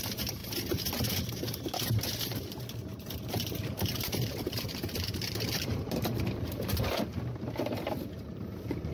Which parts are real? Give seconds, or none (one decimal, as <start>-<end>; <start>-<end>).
0.4-1.2